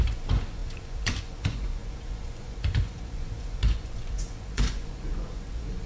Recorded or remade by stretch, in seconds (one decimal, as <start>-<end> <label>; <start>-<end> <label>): 0.0-5.9 remade